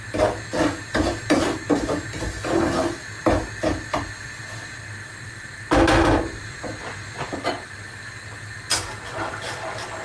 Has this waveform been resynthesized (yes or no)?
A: no